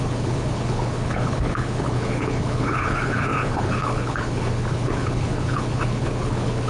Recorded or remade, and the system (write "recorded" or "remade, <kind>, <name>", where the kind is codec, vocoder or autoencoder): remade, codec, HILCodec